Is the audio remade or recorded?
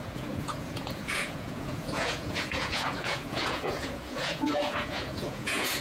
remade